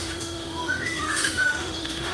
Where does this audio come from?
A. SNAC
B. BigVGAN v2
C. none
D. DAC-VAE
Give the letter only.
D